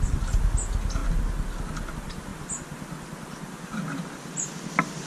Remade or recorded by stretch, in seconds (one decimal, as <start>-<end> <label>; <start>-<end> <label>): 0.0-5.1 recorded